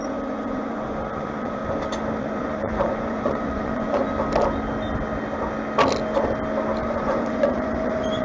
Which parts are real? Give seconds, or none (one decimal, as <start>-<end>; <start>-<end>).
1.6-2.2; 4.1-6.8